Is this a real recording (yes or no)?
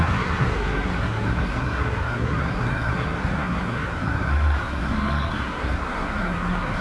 no